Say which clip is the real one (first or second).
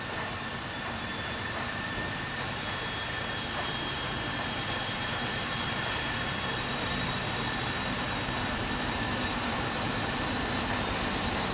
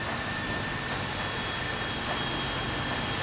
second